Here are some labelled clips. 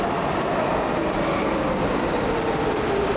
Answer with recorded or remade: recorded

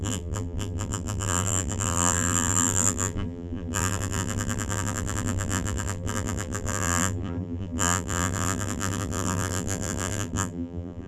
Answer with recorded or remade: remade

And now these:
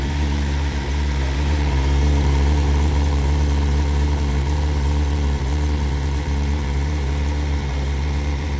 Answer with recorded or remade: remade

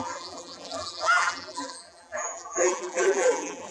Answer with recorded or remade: remade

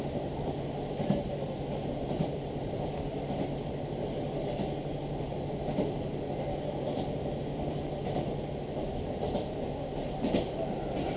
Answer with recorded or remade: recorded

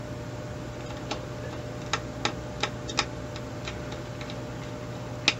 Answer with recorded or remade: recorded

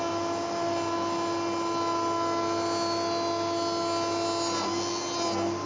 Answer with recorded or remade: recorded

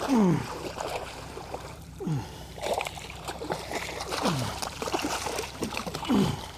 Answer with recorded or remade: remade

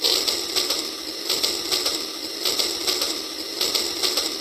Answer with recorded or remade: recorded